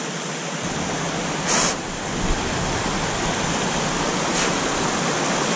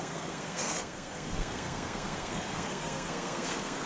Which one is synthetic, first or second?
second